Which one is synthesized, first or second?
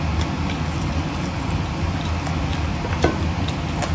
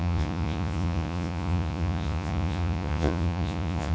second